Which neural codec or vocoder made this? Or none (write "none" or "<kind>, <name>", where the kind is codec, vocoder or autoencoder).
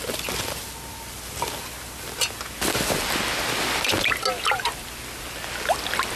none